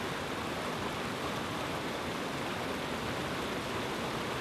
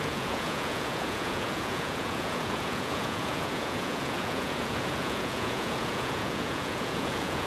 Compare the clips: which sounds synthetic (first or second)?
second